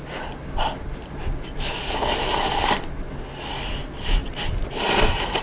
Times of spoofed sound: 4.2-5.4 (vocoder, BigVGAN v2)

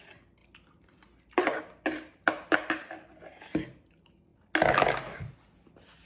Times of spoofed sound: none

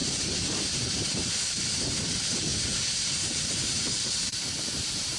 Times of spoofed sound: 0.0-2.5 (vocoder, BigVGAN v2); 3.0-5.2

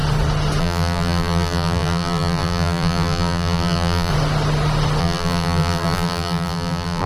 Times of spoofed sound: 0.6-4.1 (vocoder, BigVGAN v2); 5.0-7.1

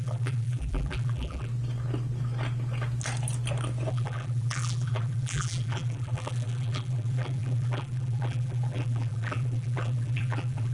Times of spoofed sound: 0.0-1.5 (vocoder, BigVGAN v2); 3.9-10.7